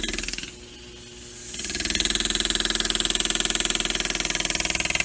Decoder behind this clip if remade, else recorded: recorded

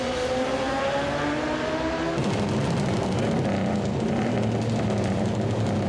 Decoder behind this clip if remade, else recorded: recorded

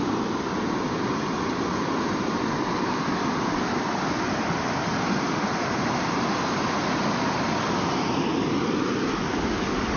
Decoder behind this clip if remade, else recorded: recorded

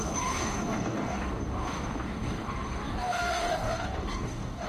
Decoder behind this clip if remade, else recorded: remade, codec, DAC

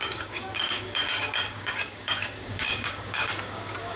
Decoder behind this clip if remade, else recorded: remade, codec, DAC